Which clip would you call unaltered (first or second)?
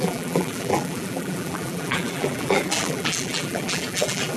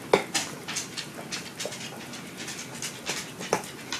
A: second